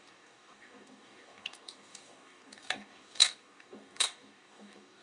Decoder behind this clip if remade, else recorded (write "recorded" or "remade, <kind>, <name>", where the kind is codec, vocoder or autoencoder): remade, codec, DAC